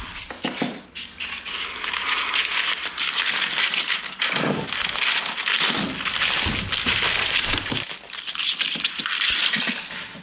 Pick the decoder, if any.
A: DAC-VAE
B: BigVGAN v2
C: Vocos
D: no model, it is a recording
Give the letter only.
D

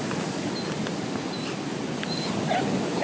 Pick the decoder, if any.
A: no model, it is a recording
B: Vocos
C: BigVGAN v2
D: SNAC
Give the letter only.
A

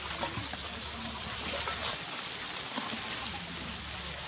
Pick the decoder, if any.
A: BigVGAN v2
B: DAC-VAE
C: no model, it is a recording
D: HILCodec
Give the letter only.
C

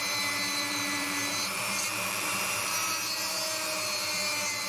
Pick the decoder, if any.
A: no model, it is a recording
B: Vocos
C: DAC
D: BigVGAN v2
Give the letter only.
D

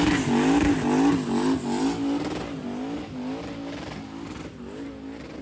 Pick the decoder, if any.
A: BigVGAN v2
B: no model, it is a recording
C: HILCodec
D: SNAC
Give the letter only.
B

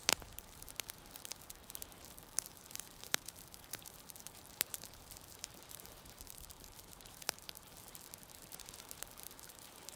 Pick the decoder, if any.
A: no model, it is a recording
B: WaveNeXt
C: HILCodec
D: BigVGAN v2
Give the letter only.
D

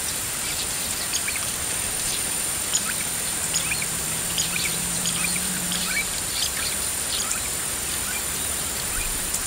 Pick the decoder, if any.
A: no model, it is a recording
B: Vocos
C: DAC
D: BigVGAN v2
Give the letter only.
D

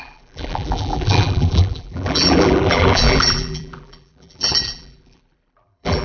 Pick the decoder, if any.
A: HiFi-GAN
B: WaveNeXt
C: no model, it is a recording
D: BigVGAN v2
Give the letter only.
D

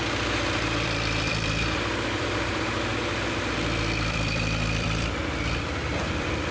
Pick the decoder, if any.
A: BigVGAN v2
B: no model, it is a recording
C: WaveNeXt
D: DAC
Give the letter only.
A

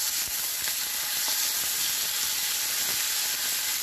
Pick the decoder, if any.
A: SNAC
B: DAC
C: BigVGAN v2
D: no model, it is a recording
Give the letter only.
D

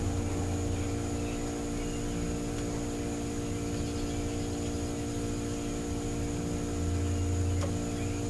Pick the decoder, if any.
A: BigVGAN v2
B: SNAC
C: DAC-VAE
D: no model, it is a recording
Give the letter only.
D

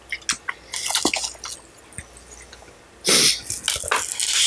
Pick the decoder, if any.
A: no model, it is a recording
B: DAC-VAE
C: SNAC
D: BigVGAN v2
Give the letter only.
A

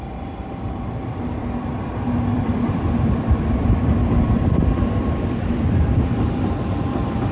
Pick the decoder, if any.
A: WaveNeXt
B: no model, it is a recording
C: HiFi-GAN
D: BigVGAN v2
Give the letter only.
D